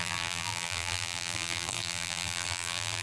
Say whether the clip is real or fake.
fake